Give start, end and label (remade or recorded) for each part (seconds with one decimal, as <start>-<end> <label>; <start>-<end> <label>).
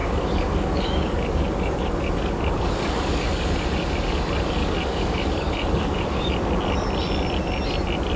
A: 0.0-3.3 remade; 3.3-4.6 recorded; 4.6-6.3 remade; 6.3-8.2 recorded